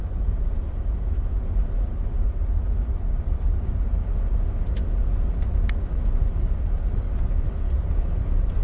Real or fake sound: real